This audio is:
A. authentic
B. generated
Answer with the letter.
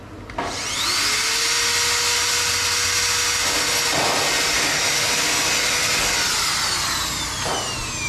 A